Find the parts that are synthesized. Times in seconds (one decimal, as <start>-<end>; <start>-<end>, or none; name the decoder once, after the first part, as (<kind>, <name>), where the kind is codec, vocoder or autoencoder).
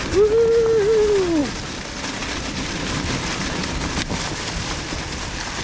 none